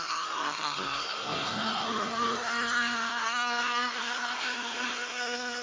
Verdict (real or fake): fake